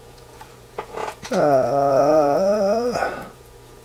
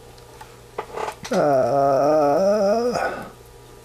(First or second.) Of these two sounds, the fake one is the first